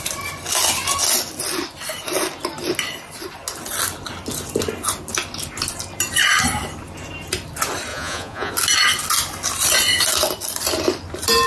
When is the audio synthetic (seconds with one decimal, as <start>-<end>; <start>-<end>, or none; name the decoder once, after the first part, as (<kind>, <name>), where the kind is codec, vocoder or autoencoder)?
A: 7.9-8.5 (vocoder, Vocos)